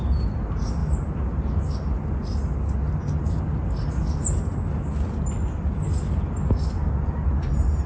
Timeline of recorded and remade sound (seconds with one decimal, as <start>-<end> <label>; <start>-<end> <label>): 0.0-7.9 recorded